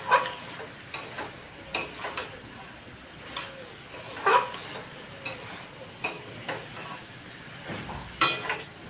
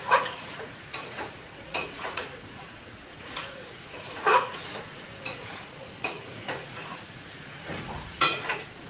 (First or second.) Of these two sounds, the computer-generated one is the second